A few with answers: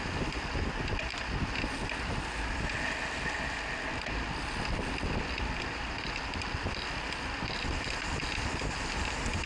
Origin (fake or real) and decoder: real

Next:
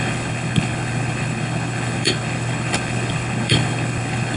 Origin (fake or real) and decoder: fake, codec, HILCodec